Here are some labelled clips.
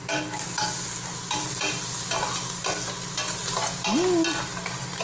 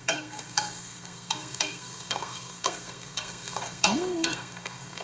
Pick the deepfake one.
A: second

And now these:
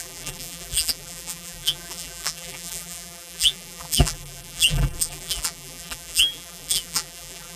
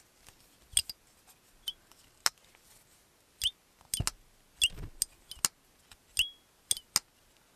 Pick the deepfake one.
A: first